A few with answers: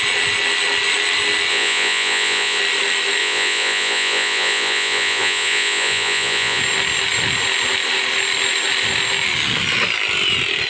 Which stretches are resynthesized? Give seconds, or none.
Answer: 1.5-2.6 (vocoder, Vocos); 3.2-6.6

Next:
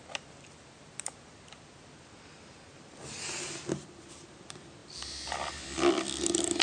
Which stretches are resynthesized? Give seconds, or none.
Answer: none

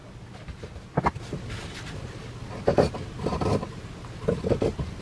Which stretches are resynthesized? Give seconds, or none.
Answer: none